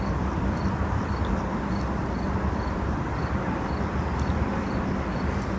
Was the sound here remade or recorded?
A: recorded